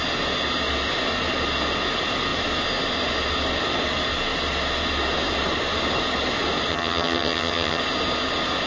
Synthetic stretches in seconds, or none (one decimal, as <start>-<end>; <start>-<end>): 6.7-7.8